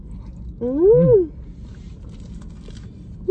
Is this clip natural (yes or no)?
yes